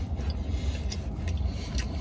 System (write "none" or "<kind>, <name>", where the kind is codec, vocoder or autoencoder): none